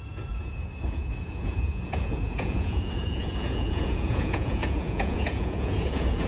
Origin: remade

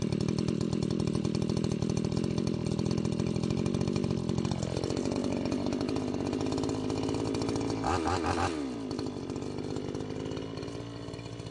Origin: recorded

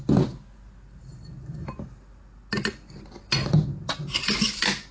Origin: recorded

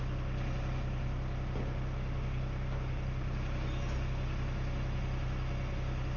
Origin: recorded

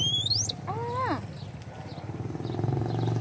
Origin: recorded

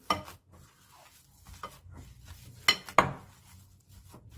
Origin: recorded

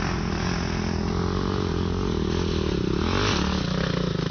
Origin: recorded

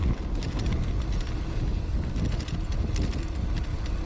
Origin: recorded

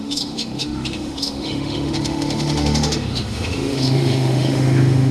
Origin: remade